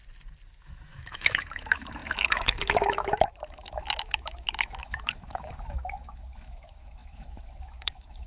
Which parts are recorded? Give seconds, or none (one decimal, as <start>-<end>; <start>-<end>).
0.0-0.6